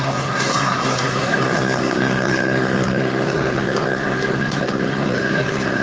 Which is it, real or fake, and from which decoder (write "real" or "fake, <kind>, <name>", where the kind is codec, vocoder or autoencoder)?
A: fake, codec, SNAC